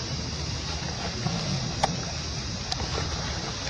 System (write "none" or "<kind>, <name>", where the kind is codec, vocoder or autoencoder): none